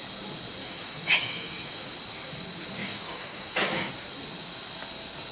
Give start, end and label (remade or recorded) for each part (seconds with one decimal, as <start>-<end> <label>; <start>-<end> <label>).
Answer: 0.0-0.6 recorded; 0.6-1.9 remade; 1.9-2.8 recorded; 2.8-3.9 remade; 3.9-5.3 recorded